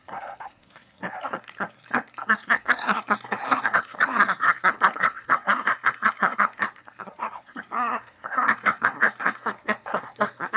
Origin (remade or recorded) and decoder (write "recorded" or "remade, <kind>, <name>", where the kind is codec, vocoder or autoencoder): remade, codec, SNAC